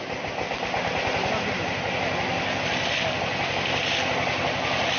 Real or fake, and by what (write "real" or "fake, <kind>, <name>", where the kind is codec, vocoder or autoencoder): real